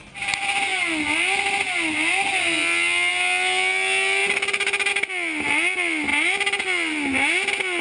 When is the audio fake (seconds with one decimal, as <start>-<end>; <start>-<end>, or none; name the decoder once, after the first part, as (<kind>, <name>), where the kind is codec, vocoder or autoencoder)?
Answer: none